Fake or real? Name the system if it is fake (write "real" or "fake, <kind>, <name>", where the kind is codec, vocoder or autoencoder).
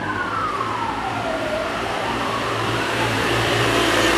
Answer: fake, vocoder, BigVGAN v2